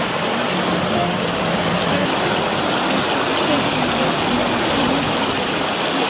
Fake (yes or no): no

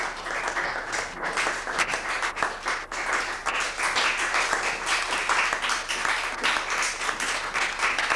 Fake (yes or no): no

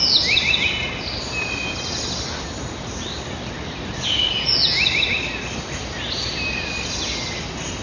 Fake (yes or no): no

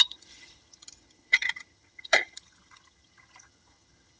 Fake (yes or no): yes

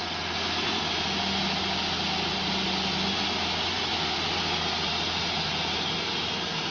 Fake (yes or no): no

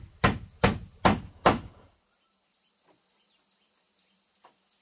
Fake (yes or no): no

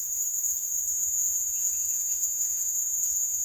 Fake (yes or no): yes